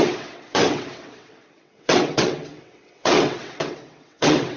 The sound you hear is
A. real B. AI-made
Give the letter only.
B